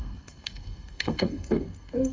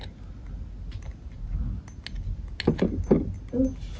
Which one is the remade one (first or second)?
first